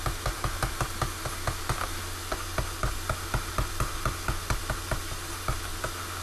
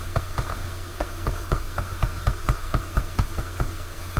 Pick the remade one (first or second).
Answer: second